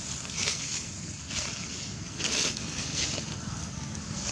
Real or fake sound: fake